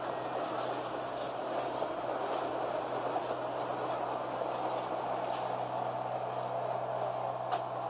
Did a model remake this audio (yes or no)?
no